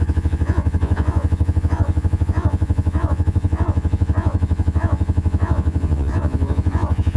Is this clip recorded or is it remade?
remade